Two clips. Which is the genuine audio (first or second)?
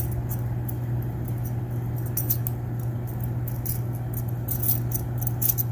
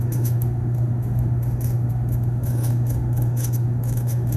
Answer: first